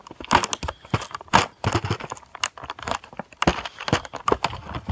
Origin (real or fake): real